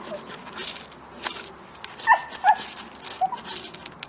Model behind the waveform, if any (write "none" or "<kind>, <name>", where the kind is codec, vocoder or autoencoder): none